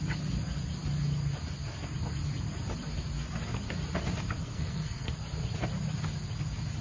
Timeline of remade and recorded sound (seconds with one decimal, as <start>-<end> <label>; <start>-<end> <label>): 0.0-4.4 recorded; 4.4-5.1 remade; 5.1-6.8 recorded